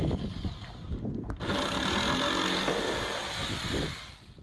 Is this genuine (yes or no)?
yes